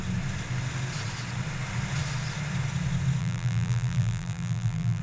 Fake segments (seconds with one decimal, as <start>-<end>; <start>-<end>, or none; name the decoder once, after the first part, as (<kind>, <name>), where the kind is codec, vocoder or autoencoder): 3.2-5.0 (vocoder, BigVGAN v2)